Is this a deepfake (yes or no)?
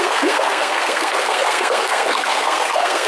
yes